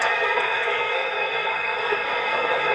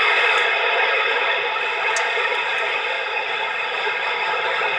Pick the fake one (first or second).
first